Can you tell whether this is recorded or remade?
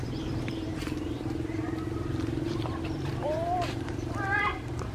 remade